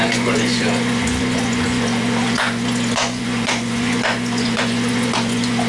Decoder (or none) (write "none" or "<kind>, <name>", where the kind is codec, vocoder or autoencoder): vocoder, Vocos